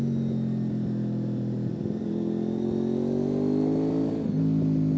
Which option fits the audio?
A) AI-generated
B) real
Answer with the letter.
B